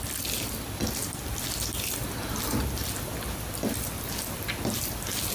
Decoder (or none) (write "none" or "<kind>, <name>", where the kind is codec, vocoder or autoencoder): none